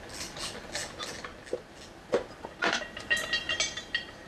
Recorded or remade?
recorded